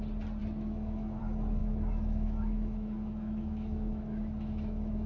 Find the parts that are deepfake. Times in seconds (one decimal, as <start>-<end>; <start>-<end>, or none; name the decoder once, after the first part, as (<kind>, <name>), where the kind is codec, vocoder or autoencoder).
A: 0.4-1.2 (autoencoder, DAC-VAE); 1.6-5.1